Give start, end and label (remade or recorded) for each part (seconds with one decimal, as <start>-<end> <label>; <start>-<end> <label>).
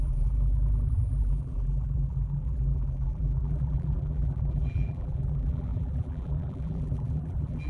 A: 0.0-7.7 remade